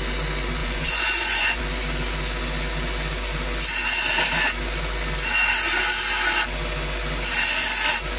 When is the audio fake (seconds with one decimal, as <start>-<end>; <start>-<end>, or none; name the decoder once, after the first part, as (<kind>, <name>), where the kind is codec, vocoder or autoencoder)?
0.6-1.6 (vocoder, Vocos)